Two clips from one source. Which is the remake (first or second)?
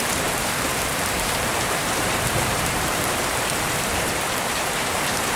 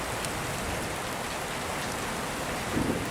first